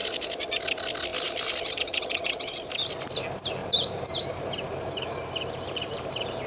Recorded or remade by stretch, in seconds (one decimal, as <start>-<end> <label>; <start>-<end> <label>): 0.0-0.6 remade; 0.6-1.1 recorded; 1.1-2.8 remade; 2.8-3.6 recorded; 3.6-6.5 remade